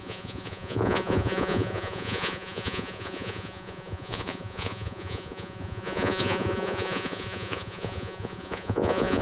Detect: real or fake fake